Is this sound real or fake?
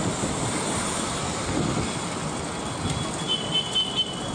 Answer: real